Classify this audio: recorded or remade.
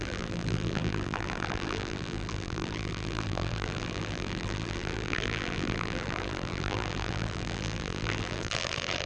remade